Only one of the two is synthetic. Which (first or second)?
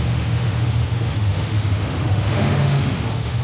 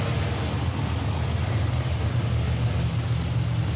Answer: first